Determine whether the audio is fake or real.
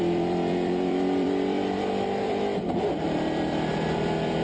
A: fake